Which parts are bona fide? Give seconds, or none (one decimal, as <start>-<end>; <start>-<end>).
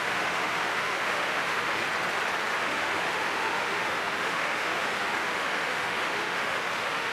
1.8-2.6